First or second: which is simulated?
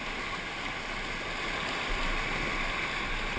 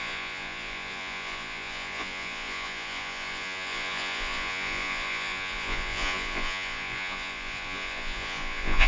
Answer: second